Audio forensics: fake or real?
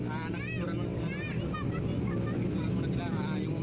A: real